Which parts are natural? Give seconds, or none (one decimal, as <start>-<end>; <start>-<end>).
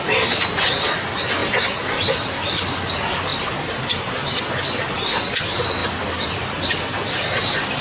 0.0-1.4; 2.9-3.3; 4.4-5.8